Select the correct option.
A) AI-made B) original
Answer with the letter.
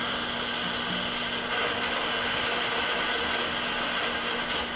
B